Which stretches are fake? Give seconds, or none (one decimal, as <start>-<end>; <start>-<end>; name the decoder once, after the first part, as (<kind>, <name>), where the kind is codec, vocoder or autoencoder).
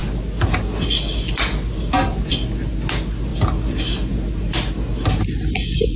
none